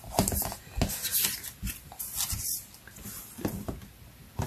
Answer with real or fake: real